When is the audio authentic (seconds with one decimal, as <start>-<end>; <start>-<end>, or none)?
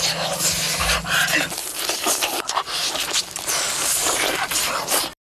0.0-1.6; 4.7-5.2